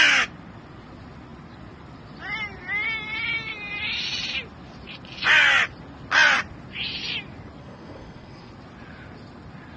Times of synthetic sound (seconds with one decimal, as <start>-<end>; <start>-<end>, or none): 7.6-8.5